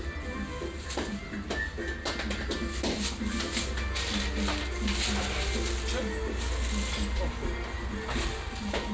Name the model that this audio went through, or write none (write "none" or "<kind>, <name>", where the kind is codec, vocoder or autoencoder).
none